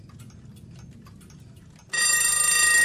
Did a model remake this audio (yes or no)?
no